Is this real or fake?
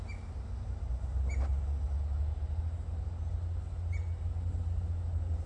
real